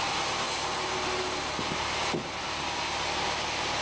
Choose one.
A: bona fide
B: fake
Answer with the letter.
A